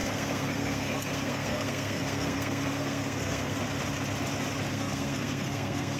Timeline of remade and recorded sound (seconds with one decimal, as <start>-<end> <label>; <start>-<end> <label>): 0.0-3.6 remade; 3.6-4.7 recorded; 4.7-6.0 remade